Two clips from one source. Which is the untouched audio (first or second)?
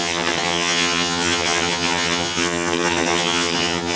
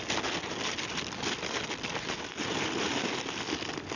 second